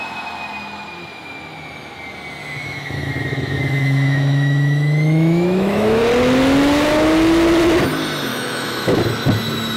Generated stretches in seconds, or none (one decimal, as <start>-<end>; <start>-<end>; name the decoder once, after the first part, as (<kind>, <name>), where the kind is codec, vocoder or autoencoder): 2.4-6.0 (autoencoder, DAC-VAE); 8.3-9.0